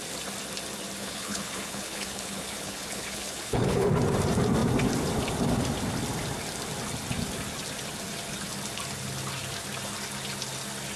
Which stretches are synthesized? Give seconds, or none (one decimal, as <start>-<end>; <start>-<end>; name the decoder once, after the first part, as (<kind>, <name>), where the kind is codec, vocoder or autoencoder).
1.0-3.9 (codec, HILCodec)